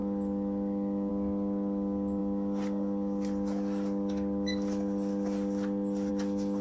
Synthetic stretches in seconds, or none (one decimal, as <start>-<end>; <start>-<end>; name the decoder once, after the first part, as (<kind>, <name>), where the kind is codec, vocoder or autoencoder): none